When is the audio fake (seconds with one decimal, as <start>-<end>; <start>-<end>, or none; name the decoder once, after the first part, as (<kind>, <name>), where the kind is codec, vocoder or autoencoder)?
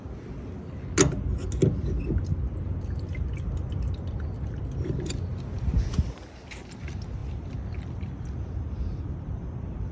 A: none